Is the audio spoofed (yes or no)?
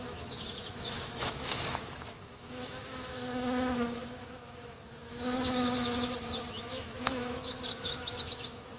yes